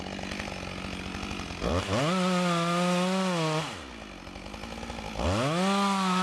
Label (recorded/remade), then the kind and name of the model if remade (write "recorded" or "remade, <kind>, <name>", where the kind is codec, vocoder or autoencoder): recorded